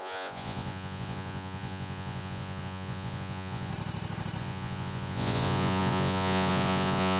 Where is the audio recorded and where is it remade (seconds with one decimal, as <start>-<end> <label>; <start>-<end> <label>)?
0.0-3.7 remade; 3.7-4.4 recorded; 4.4-7.2 remade